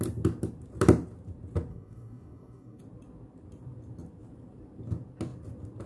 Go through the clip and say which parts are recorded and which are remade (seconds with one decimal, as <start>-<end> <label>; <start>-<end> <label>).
0.0-1.7 recorded; 1.7-2.8 remade; 2.8-5.9 recorded